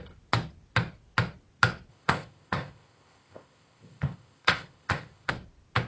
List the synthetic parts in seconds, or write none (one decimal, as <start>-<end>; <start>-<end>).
1.9-5.3